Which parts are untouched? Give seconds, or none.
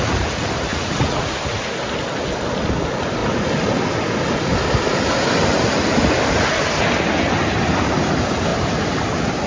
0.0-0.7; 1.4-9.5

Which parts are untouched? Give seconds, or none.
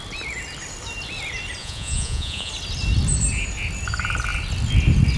0.0-1.6; 2.5-5.2